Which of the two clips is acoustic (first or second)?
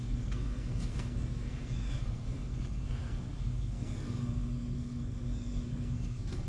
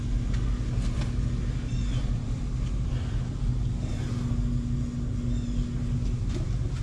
second